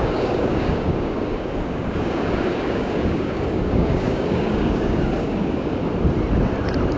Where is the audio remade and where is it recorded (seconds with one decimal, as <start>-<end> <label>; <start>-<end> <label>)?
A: 0.0-5.8 remade; 5.8-7.0 recorded